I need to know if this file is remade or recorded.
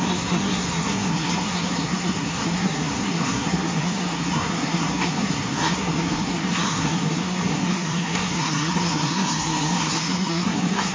remade